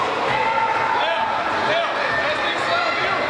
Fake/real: real